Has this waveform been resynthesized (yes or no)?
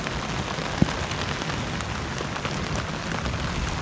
no